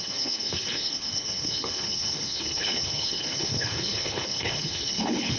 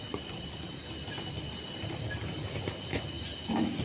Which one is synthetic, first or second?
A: first